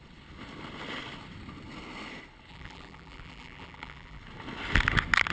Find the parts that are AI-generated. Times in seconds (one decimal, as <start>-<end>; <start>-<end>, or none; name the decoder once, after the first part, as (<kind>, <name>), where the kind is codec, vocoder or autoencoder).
2.5-4.2 (vocoder, BigVGAN v2)